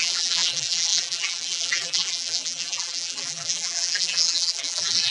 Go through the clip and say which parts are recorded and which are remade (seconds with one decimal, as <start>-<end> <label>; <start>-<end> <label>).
0.0-5.1 remade